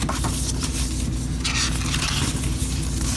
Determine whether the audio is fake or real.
real